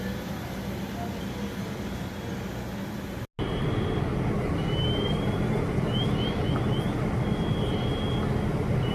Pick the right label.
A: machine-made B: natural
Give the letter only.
B